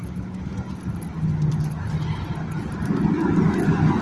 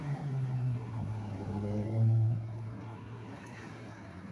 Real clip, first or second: first